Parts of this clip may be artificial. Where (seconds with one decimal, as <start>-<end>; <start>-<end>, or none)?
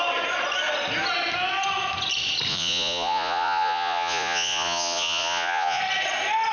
2.5-5.8